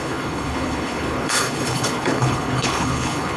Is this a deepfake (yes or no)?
yes